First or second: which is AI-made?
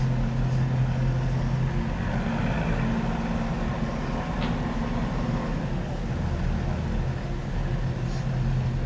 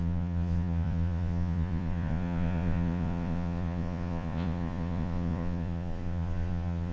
second